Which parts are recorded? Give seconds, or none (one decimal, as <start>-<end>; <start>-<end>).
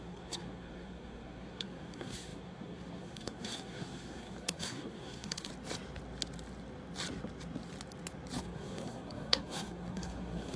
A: 5.5-8.4